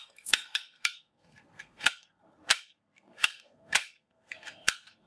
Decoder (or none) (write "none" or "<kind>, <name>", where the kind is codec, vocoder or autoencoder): codec, SNAC